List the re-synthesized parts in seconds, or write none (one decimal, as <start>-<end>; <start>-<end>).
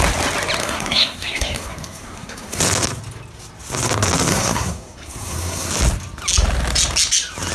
0.6-2.6; 4.3-5.7